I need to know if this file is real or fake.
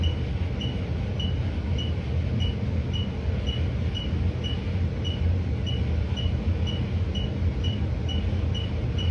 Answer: real